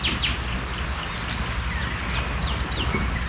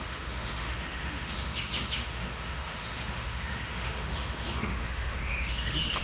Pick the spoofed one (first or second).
second